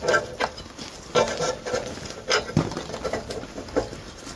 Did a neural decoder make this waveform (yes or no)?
no